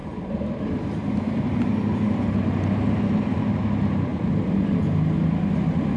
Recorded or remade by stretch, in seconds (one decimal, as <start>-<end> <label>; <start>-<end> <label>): 0.0-4.1 recorded; 4.1-4.8 remade; 4.8-6.0 recorded